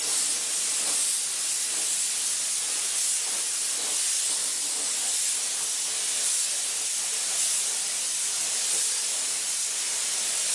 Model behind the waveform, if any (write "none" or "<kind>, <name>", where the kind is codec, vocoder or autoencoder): none